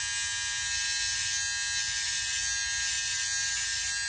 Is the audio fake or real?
real